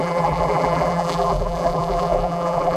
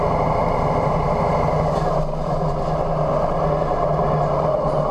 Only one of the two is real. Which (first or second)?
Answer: second